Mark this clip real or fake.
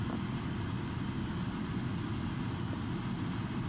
real